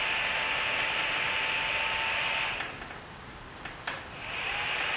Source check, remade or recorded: recorded